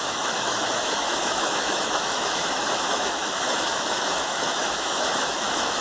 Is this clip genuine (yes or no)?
no